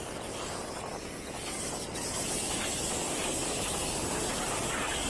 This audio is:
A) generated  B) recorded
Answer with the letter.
B